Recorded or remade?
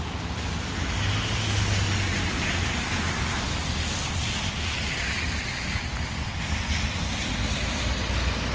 recorded